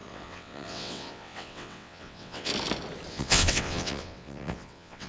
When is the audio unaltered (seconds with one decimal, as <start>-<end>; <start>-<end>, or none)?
2.5-3.1